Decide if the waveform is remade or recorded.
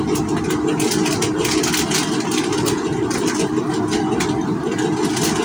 recorded